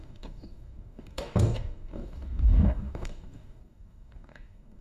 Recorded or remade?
remade